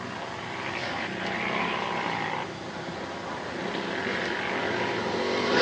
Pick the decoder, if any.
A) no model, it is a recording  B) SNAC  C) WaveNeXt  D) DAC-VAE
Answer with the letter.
A